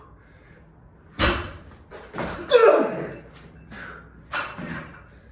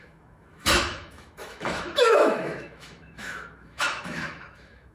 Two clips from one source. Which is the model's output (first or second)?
second